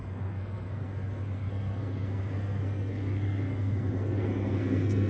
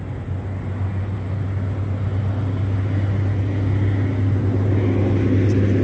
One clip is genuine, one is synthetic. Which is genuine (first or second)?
second